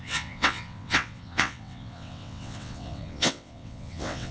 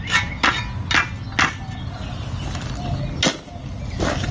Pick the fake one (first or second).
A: first